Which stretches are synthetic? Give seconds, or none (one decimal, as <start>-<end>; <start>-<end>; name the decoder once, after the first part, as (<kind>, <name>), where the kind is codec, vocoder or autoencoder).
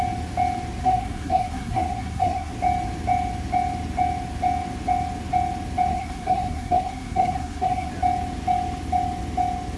0.8-2.5 (codec, SNAC); 5.9-7.9